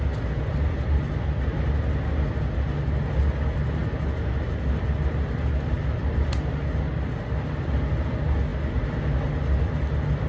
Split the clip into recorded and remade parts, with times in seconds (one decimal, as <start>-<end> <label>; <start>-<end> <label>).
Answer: 0.0-10.3 recorded